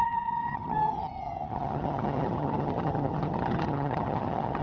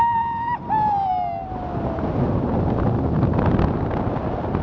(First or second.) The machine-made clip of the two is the first